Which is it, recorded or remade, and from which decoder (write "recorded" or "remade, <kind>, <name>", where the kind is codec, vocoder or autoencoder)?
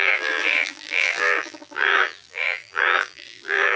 remade, vocoder, BigVGAN v2